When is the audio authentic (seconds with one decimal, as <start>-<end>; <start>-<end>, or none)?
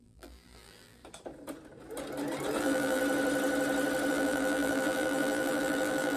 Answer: 1.0-2.6; 3.0-4.1